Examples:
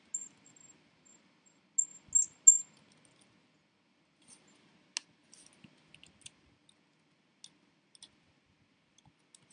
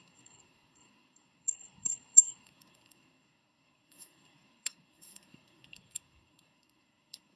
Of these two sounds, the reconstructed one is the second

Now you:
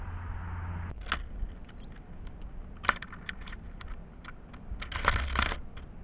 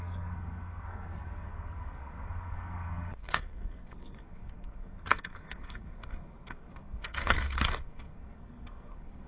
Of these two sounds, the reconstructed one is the second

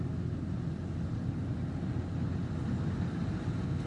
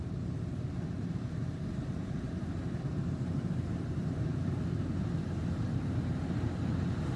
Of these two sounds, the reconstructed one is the second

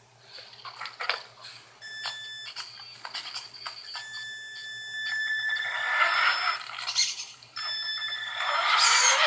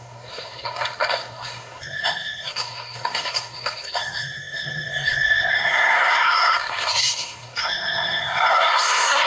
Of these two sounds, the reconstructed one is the second